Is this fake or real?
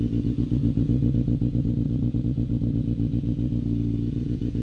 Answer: fake